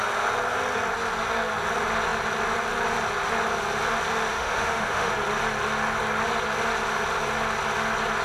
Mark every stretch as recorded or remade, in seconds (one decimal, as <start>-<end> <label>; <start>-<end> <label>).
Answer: 0.0-4.3 recorded; 4.3-5.1 remade; 5.1-8.2 recorded